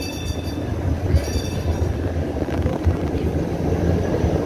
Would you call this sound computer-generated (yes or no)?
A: no